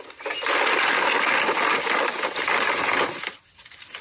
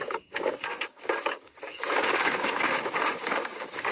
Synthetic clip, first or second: second